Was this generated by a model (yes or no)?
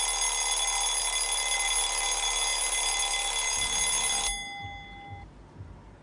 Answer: no